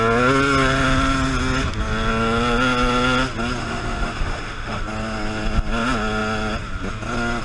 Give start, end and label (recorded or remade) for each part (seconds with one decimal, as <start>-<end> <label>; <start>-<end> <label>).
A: 0.0-3.6 recorded; 3.6-4.8 remade; 4.8-7.4 recorded